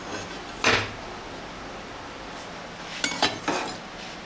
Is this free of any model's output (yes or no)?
yes